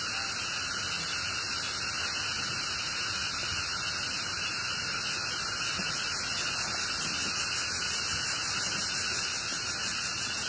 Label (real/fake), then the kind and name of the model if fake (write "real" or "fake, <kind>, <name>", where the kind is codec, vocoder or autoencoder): real